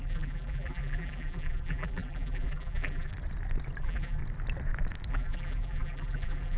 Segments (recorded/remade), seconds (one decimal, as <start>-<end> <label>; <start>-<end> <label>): 0.0-3.1 remade; 3.1-3.8 recorded; 3.8-4.2 remade; 4.2-5.1 recorded; 5.1-6.6 remade